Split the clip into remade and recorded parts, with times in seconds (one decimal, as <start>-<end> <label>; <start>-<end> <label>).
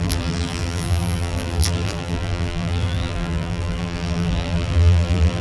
0.0-5.4 remade